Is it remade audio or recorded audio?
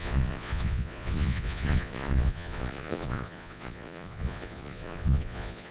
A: remade